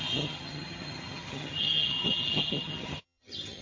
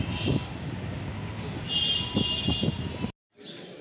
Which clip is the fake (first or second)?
first